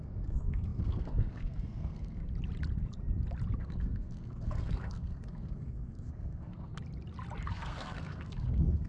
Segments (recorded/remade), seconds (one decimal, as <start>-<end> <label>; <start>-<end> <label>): 0.0-2.2 remade; 2.2-3.6 recorded; 3.6-6.7 remade; 6.7-7.5 recorded; 7.5-8.9 remade

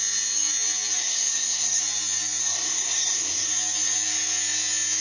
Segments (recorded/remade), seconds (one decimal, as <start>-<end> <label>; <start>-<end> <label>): 0.0-1.0 recorded; 1.0-1.8 remade; 1.8-2.4 recorded; 2.4-3.5 remade; 3.5-5.0 recorded

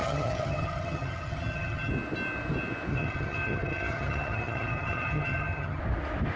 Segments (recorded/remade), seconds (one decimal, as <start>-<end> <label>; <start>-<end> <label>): 0.0-1.9 remade; 1.9-2.9 recorded; 2.9-5.8 remade; 5.8-6.4 recorded